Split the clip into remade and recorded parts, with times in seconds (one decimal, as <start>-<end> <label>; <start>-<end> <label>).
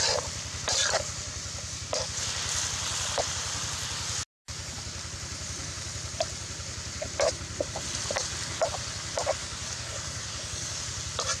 0.0-9.4 recorded; 9.4-10.8 remade; 10.8-11.4 recorded